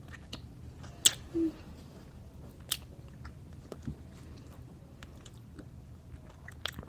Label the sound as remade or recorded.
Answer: recorded